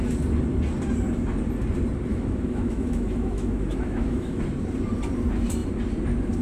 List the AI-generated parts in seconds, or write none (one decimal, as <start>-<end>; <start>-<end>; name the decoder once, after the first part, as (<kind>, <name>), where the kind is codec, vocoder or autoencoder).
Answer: 2.1-4.4 (autoencoder, DAC-VAE)